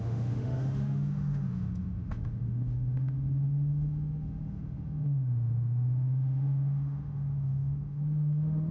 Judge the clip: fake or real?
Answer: fake